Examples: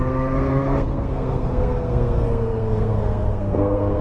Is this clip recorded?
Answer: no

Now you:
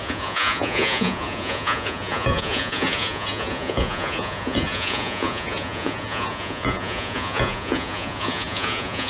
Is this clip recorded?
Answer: no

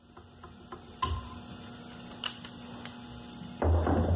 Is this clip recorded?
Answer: yes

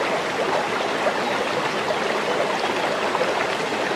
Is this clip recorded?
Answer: yes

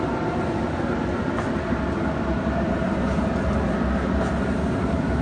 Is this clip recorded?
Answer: yes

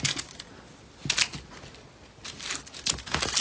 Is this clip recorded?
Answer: yes